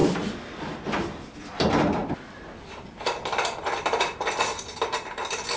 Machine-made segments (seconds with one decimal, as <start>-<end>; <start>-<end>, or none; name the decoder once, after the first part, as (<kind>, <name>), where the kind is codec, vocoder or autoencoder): 0.0-0.8 (vocoder, BigVGAN v2); 2.0-5.6